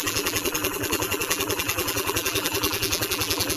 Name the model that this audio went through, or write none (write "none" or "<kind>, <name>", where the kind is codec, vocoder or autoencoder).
vocoder, BigVGAN v2